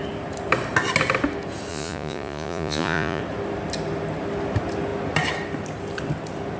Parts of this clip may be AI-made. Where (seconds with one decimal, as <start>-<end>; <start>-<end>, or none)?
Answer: 1.7-3.2